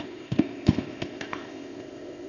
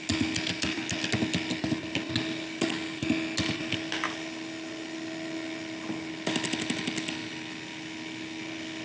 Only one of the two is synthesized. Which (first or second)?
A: first